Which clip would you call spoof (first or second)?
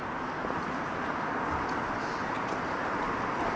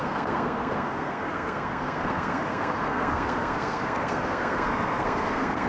second